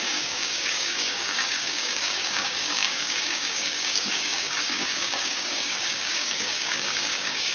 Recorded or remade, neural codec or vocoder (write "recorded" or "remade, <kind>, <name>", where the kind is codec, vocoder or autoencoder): remade, codec, DAC